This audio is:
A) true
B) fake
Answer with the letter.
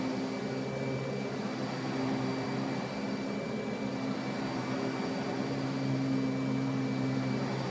A